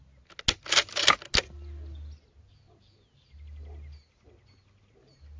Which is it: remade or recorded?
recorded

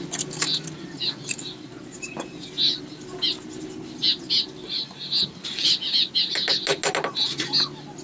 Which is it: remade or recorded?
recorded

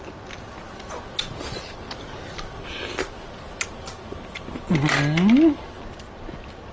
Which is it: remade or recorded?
recorded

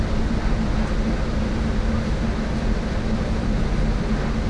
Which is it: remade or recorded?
recorded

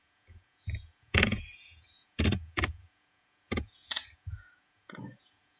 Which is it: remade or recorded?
remade